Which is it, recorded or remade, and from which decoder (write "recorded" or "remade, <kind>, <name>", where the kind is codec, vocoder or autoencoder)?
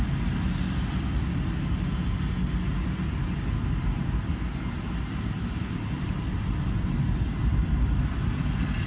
recorded